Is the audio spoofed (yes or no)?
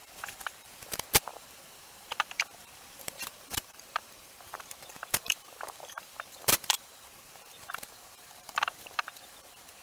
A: yes